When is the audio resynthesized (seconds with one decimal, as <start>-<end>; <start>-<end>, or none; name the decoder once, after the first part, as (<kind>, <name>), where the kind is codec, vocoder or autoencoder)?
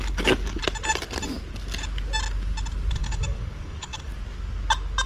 0.0-0.6 (codec, DAC); 2.9-4.1